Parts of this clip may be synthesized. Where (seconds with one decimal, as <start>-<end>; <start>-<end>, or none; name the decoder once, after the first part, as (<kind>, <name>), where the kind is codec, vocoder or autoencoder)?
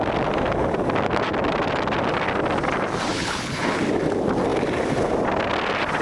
3.1-3.8 (codec, HILCodec)